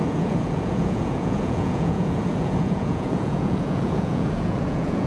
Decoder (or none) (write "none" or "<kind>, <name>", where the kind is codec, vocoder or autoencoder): vocoder, Vocos